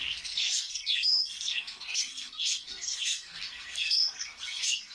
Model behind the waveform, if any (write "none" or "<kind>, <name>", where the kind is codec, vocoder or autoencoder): codec, SNAC